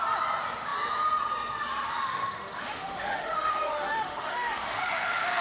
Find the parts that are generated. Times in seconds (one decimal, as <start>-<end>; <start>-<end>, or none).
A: 2.1-5.4